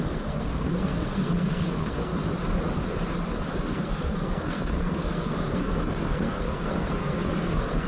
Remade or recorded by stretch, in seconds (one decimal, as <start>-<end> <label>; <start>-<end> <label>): 0.0-2.1 remade; 2.1-3.6 recorded; 3.6-7.9 remade